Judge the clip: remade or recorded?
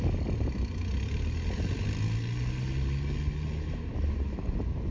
recorded